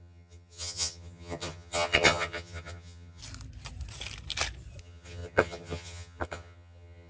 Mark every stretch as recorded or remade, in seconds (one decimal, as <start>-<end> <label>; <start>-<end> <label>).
0.0-3.2 remade; 3.2-4.8 recorded; 4.8-7.1 remade